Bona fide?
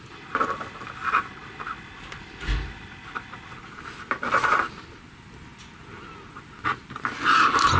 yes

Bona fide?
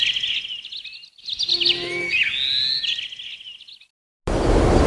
yes